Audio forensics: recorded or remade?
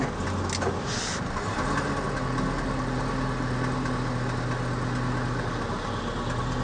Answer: recorded